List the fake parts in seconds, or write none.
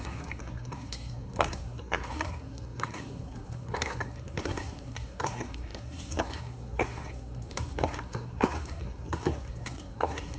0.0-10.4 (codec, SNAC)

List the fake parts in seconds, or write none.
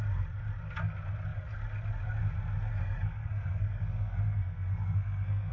2.8-5.5 (codec, SNAC)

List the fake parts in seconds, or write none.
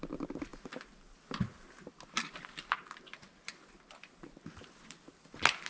none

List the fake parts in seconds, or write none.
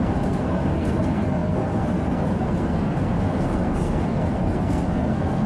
0.0-5.5 (codec, SNAC)